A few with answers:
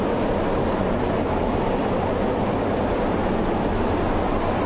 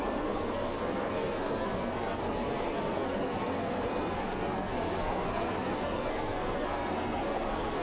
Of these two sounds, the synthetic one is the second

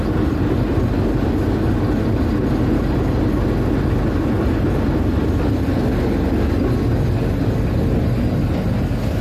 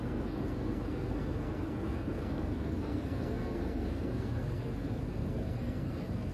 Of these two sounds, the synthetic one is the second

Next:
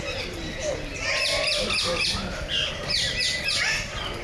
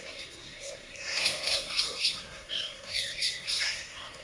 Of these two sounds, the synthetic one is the second